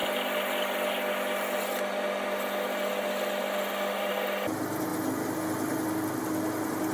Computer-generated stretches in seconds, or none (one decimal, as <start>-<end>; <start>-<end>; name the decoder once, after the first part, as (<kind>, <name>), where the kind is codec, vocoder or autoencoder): none